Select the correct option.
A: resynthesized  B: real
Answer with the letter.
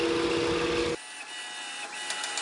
B